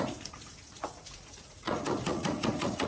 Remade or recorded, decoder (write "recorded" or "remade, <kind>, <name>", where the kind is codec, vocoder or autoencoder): remade, vocoder, Vocos